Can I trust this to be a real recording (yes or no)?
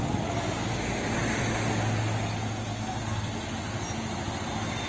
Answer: yes